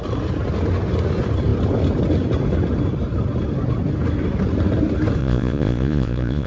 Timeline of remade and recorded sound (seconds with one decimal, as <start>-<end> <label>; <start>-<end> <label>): 0.0-5.2 recorded; 5.2-6.5 remade